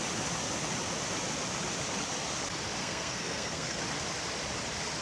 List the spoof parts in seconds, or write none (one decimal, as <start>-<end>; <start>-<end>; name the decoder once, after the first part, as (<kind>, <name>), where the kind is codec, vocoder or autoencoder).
2.8-3.8 (codec, SNAC)